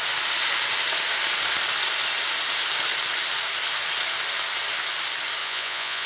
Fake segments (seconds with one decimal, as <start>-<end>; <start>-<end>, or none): 5.4-6.1

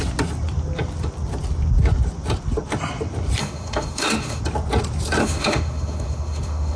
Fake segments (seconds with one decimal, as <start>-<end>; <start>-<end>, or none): 3.4-4.4; 5.2-6.8

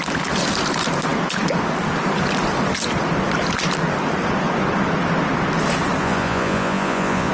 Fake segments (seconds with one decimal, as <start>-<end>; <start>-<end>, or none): 6.0-7.3

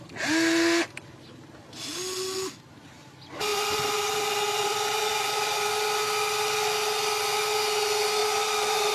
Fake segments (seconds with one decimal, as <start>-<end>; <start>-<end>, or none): 3.5-5.7; 8.2-8.9

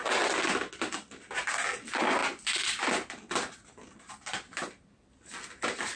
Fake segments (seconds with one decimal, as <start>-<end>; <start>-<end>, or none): none

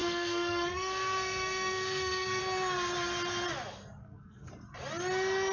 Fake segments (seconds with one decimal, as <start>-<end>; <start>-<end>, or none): 0.0-2.4; 4.0-4.5

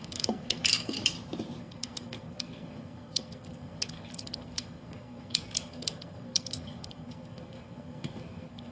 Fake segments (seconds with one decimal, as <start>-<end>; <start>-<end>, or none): 0.0-1.0; 1.6-8.7